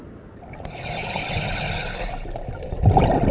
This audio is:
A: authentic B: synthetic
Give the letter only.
A